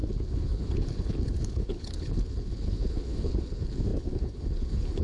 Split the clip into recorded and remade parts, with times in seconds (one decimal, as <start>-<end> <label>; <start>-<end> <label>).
0.0-5.0 remade